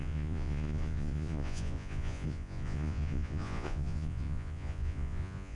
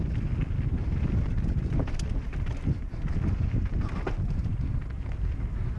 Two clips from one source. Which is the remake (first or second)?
first